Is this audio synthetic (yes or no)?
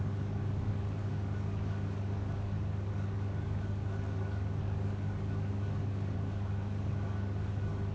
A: yes